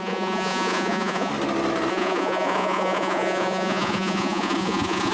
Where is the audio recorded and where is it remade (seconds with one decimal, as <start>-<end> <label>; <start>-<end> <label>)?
0.0-1.3 remade; 1.3-1.9 recorded; 1.9-5.1 remade

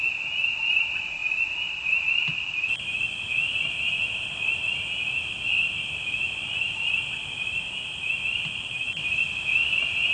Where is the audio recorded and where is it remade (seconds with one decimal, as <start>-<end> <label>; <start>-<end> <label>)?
0.0-10.1 recorded